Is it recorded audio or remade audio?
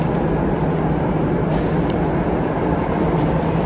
recorded